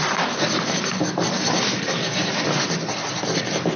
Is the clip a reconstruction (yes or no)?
no